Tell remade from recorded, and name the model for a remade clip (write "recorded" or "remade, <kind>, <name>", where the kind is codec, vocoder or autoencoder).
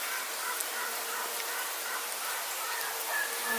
remade, vocoder, BigVGAN v2